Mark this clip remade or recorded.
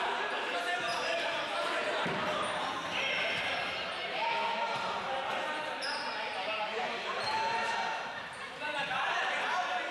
remade